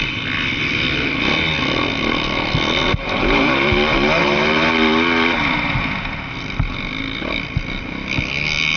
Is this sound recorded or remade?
recorded